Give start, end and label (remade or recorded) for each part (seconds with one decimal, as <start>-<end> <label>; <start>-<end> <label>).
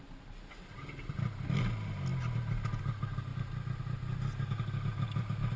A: 0.0-5.6 recorded